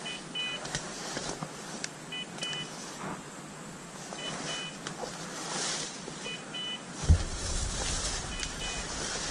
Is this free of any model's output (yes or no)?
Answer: yes